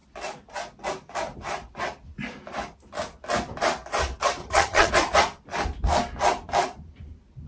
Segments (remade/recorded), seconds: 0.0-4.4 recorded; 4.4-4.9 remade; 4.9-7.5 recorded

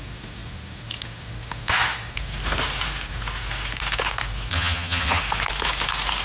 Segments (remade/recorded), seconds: 0.0-4.5 recorded; 4.5-5.2 remade; 5.2-6.2 recorded